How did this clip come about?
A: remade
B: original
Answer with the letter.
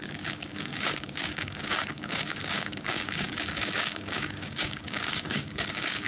A